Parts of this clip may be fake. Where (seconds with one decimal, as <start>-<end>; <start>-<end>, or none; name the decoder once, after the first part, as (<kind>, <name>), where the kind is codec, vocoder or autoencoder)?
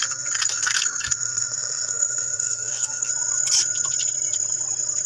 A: 0.0-3.1 (codec, SNAC)